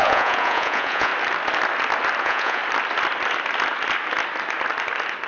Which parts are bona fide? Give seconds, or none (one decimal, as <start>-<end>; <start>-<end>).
1.1-2.2; 2.6-5.3